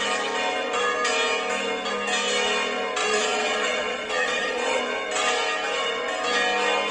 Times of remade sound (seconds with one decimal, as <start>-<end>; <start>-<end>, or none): 3.0-4.8